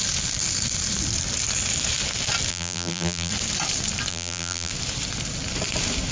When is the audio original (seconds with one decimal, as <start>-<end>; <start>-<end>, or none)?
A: 0.0-2.5; 3.3-4.1; 4.7-6.1